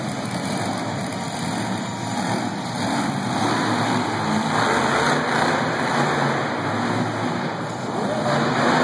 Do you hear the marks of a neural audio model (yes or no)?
no